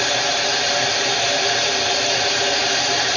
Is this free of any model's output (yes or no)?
no